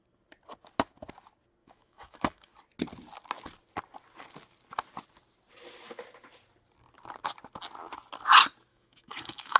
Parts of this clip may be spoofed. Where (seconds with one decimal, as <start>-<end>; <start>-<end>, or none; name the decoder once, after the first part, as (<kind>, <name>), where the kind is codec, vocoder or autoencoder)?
1.6-2.5 (autoencoder, DAC-VAE); 8.7-9.6

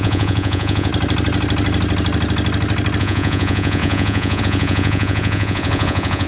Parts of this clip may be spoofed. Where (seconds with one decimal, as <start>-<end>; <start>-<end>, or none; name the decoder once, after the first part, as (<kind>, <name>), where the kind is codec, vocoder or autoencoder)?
0.0-0.9 (vocoder, Vocos); 3.0-6.3

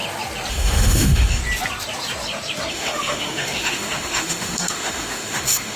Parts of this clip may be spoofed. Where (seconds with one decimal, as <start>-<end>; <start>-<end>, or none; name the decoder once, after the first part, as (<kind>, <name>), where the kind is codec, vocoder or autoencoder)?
0.5-1.4 (autoencoder, DAC-VAE); 2.7-5.8

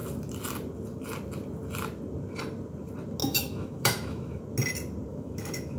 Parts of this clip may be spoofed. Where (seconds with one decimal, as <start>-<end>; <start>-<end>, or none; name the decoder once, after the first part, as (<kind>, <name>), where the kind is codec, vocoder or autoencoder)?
3.2-4.4 (autoencoder, DAC-VAE); 5.1-5.8

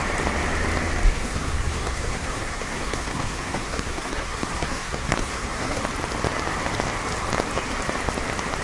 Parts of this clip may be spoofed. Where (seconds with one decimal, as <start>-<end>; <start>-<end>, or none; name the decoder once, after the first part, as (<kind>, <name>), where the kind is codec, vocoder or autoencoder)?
1.1-5.8 (codec, SNAC)

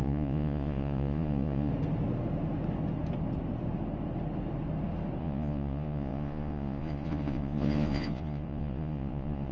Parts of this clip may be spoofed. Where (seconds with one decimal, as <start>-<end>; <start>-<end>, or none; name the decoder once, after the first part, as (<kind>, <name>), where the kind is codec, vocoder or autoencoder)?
0.0-1.7 (vocoder, Vocos); 5.2-9.5

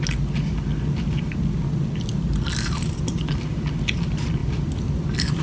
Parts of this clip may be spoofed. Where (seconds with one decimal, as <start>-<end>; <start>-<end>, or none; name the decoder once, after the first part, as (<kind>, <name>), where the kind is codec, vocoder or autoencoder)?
none